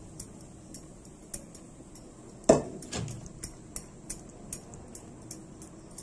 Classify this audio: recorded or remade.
recorded